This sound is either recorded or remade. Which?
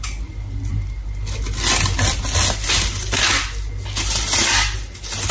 recorded